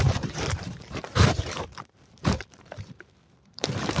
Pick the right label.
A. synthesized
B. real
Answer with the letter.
A